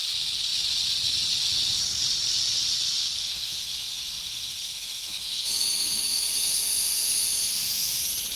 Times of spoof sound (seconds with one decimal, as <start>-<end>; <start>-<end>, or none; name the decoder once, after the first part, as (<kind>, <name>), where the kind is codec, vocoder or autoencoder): 3.2-8.0 (autoencoder, DAC-VAE)